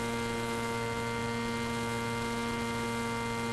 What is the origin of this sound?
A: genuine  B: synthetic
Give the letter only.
A